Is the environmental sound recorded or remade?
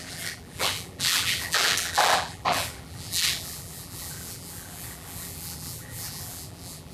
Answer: remade